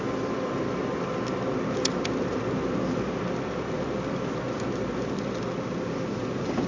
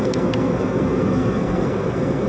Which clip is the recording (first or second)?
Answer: first